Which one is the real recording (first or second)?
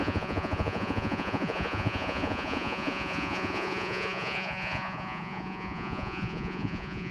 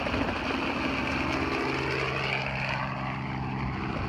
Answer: second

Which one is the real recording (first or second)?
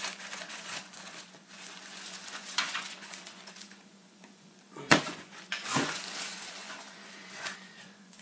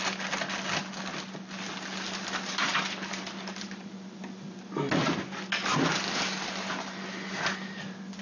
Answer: second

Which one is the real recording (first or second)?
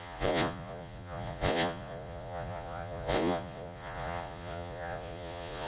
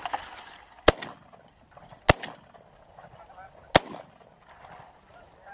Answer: second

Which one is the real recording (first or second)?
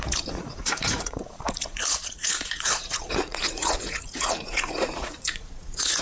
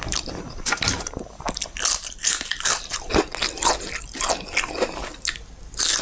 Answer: second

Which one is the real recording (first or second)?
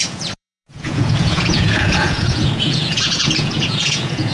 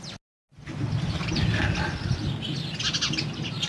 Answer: second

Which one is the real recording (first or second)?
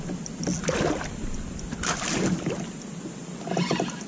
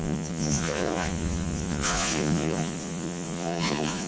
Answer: first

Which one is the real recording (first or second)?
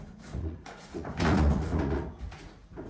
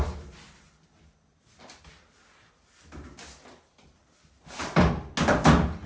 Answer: second